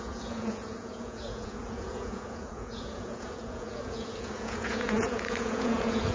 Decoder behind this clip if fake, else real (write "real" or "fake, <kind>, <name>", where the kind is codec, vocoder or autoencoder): fake, vocoder, Vocos